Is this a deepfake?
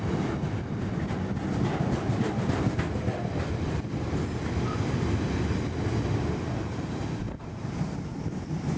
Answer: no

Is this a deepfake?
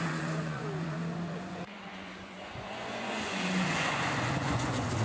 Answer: yes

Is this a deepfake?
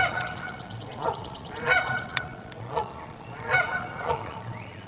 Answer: yes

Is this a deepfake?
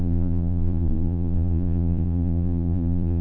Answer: yes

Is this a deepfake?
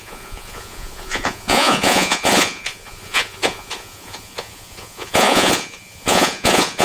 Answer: yes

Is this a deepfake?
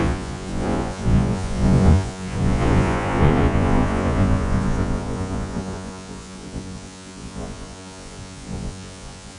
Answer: yes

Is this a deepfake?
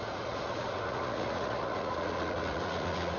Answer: yes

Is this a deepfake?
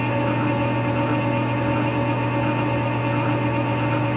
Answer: no